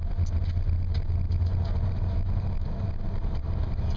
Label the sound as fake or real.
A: real